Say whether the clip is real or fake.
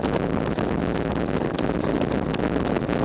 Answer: real